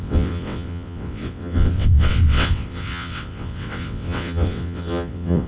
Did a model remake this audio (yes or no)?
yes